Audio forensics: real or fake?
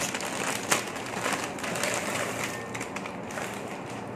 real